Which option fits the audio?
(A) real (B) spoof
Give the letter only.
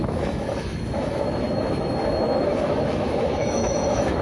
B